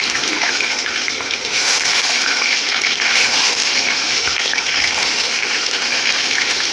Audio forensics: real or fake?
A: fake